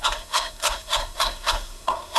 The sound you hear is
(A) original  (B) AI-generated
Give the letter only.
B